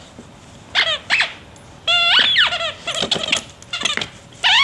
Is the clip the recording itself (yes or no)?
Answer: yes